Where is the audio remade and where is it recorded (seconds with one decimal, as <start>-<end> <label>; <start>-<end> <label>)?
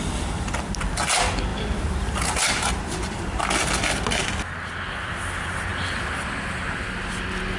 0.0-1.5 recorded; 1.5-3.4 remade; 3.4-7.6 recorded